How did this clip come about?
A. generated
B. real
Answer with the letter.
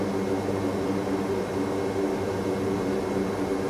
B